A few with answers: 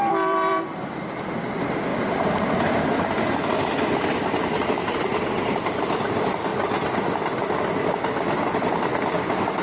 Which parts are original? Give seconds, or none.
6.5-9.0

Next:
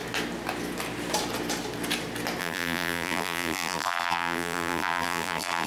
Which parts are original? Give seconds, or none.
0.0-2.4

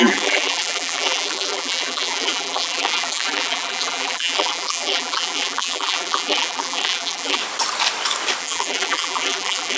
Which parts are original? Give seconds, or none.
7.4-8.4

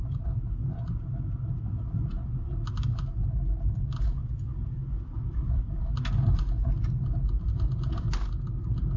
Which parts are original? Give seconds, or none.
0.0-9.0

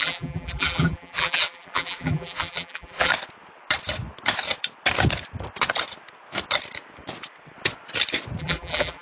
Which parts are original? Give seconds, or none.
3.1-8.4